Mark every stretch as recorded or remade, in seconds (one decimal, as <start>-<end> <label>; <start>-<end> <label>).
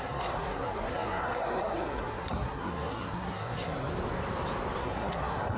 0.0-3.9 remade; 3.9-4.8 recorded; 4.8-5.6 remade